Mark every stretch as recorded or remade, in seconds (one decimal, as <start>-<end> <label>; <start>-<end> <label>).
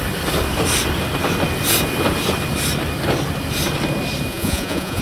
0.0-4.3 recorded; 4.3-5.0 remade